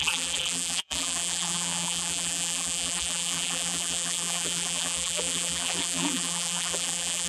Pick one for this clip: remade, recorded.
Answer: remade